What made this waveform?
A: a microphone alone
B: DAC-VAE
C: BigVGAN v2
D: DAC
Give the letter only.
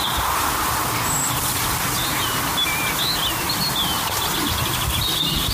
A